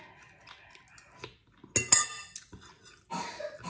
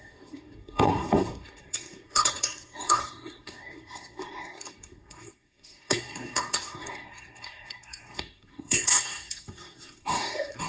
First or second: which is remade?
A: second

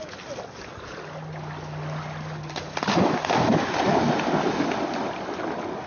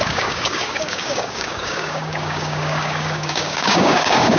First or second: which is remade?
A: second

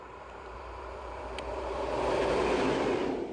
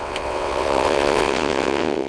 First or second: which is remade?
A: second